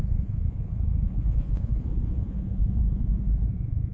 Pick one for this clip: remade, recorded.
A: remade